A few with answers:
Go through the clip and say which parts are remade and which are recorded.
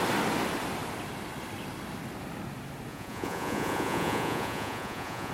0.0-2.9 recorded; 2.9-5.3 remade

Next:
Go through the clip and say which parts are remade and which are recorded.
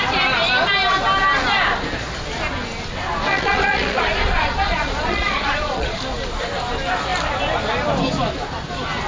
0.0-3.3 recorded; 3.3-6.0 remade; 6.0-9.1 recorded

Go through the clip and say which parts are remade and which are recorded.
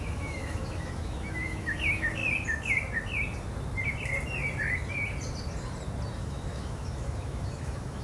0.0-2.2 remade; 2.2-6.2 recorded; 6.2-8.0 remade